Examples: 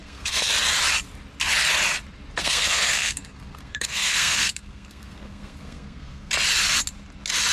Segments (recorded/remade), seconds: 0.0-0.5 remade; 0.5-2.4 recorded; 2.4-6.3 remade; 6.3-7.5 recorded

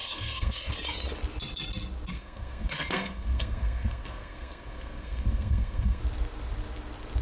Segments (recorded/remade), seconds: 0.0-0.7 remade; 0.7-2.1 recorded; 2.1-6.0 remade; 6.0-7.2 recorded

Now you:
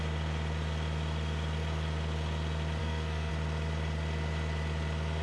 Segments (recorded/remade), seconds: 0.0-2.8 recorded; 2.8-3.3 remade; 3.3-5.2 recorded

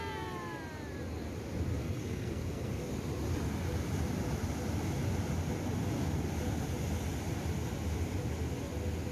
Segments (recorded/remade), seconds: 0.0-1.8 recorded; 1.8-2.7 remade; 2.7-9.1 recorded

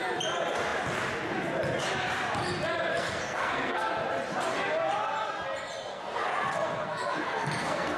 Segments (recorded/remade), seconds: 0.0-2.9 recorded; 2.9-3.9 remade; 3.9-5.9 recorded; 5.9-8.0 remade

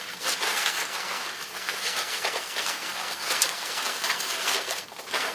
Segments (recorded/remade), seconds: 0.0-5.3 remade

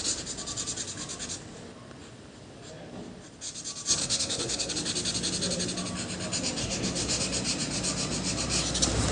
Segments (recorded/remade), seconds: 0.0-4.0 recorded; 4.0-4.7 remade; 4.7-6.6 recorded; 6.6-7.2 remade; 7.2-9.1 recorded